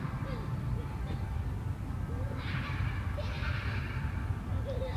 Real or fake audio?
fake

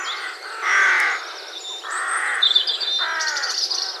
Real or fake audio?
real